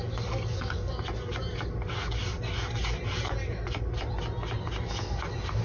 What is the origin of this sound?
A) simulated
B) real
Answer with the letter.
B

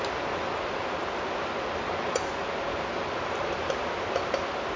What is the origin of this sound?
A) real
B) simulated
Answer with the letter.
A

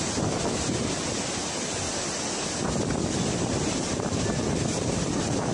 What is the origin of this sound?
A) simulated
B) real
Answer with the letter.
B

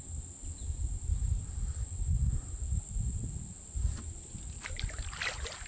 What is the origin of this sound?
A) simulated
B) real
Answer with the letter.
B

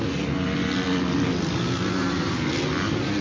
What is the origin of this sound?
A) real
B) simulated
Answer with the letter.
A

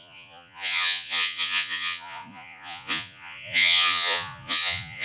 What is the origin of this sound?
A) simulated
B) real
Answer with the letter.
A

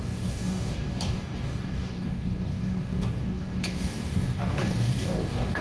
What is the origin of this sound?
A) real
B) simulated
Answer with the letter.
B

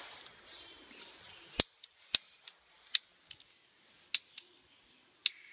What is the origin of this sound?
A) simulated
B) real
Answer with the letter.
B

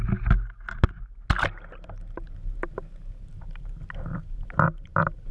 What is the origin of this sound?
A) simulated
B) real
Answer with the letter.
B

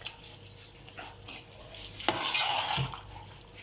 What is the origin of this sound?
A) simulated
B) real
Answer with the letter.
B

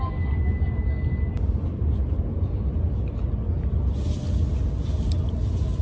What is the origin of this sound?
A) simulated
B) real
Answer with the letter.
B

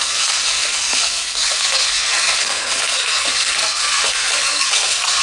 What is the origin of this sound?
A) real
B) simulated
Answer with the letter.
B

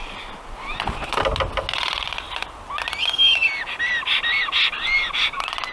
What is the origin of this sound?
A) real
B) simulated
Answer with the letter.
A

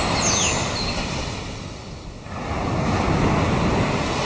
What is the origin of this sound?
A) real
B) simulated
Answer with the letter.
A